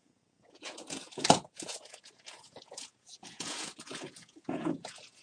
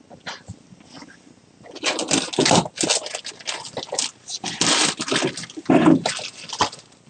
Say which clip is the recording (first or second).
second